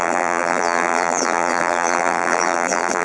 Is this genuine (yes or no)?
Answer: no